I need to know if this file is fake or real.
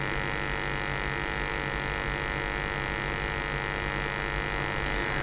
real